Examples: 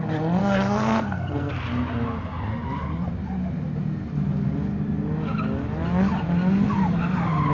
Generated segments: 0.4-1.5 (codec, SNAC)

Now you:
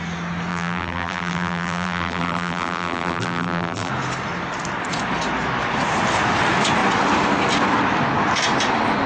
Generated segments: 0.5-3.9 (vocoder, BigVGAN v2)

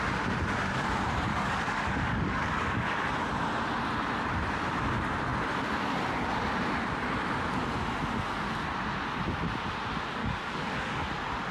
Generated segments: 1.3-3.0 (codec, DAC); 10.2-11.1

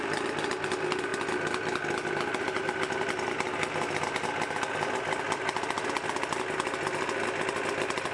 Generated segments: none

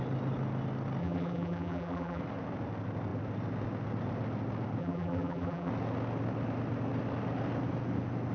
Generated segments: 1.0-2.2 (vocoder, BigVGAN v2); 4.8-5.7